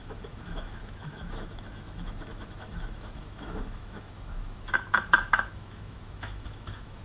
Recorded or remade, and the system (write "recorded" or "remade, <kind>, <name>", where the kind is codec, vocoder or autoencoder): remade, autoencoder, DAC-VAE